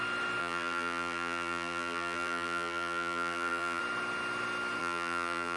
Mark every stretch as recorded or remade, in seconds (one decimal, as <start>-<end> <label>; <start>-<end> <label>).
0.0-0.4 recorded; 0.4-3.8 remade; 3.8-4.8 recorded; 4.8-5.6 remade